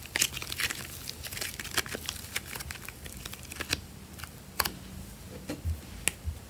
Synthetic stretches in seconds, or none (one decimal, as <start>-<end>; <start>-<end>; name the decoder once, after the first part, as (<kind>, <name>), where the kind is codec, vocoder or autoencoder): none